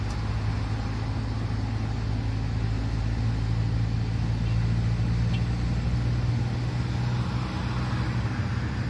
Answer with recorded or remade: recorded